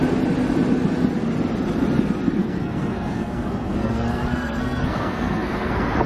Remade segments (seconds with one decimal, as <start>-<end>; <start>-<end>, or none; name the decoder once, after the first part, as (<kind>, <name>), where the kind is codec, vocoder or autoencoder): 2.4-6.1 (codec, SNAC)